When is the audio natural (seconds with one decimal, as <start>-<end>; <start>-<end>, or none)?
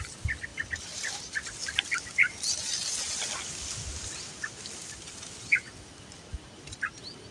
0.0-7.3